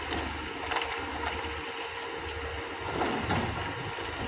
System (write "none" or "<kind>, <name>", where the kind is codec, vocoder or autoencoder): none